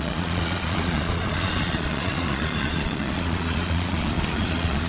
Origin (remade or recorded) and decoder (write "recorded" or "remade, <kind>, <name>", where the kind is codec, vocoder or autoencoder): remade, vocoder, Vocos